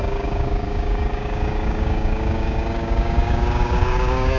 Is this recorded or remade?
remade